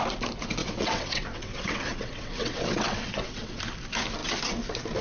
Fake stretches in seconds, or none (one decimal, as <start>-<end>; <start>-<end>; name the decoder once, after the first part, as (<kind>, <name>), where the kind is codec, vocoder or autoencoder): 0.6-3.6 (vocoder, WaveNeXt)